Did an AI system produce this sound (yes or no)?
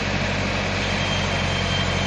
no